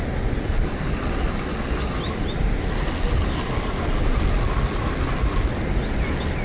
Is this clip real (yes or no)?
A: yes